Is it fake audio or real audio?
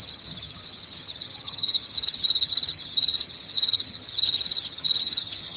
fake